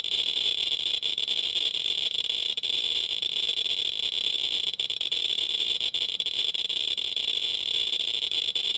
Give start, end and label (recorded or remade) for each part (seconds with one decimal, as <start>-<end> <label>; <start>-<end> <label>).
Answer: 0.0-3.5 remade; 3.5-4.3 recorded; 4.3-8.8 remade